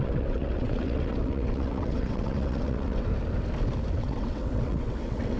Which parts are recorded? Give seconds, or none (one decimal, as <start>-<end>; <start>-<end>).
3.1-3.9